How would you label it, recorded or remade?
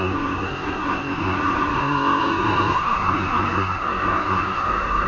remade